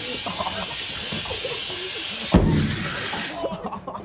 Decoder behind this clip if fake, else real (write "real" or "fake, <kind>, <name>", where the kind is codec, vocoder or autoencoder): real